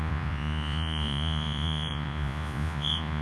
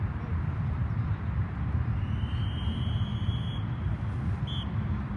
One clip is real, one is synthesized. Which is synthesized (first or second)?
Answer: first